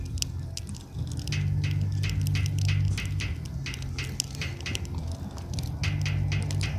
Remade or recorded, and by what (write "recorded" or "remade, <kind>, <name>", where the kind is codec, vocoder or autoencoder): recorded